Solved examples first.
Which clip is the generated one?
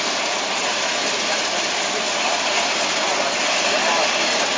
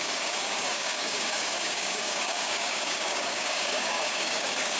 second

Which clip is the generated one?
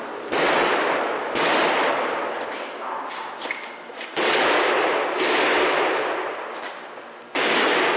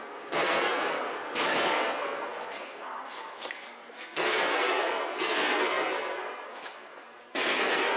second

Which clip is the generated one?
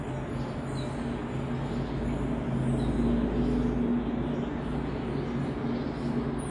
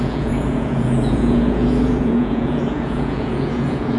second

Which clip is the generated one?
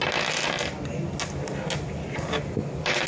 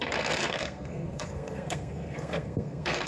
second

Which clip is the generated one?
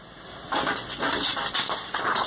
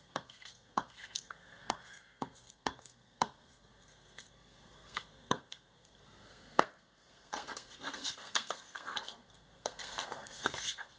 second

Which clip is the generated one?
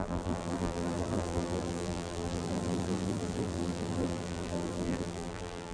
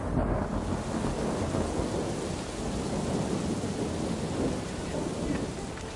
first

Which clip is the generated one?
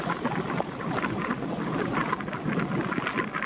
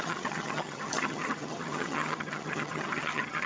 second